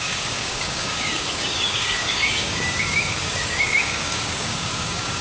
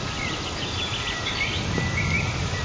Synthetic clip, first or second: first